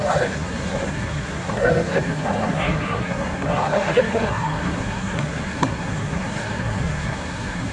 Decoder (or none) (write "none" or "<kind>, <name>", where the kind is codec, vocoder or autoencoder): codec, SNAC